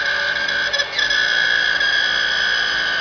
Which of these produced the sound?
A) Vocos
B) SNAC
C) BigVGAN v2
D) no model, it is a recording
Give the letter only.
D